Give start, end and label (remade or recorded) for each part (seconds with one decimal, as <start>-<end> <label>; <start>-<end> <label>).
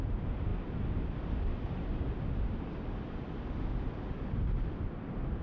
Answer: 0.0-5.4 recorded